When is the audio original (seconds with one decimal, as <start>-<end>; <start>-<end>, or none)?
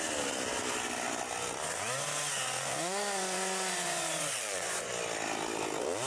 0.0-2.7; 4.9-6.1